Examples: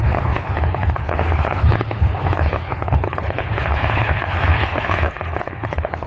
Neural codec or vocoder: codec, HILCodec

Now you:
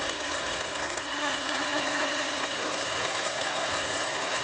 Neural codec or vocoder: codec, SNAC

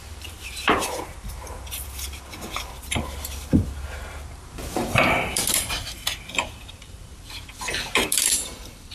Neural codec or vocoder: vocoder, BigVGAN v2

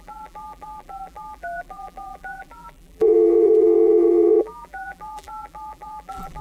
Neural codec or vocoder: vocoder, BigVGAN v2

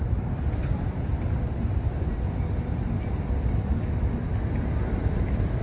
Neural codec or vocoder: none